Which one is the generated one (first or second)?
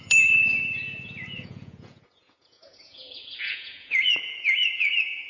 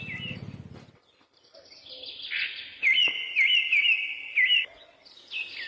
first